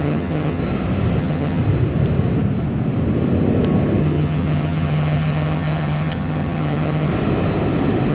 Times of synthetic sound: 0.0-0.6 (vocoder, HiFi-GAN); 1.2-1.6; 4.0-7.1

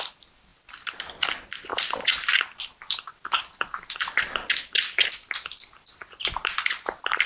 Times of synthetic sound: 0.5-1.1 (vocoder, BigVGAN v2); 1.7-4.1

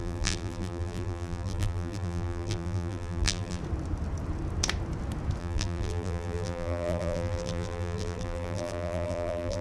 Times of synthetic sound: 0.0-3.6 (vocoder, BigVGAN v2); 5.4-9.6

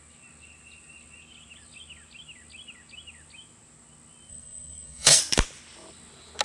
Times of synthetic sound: 4.3-5.2 (codec, SNAC)

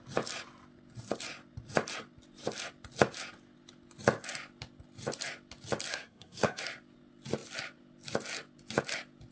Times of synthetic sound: 5.9-6.6 (codec, SNAC)

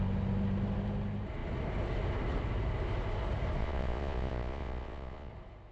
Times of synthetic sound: 3.6-5.3 (vocoder, Vocos)